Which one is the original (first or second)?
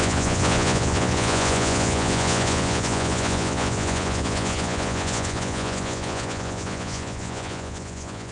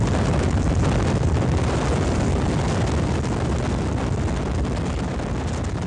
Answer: second